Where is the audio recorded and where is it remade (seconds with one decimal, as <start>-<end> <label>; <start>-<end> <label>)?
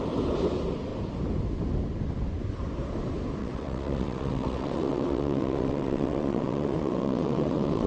0.0-3.4 recorded; 3.4-7.9 remade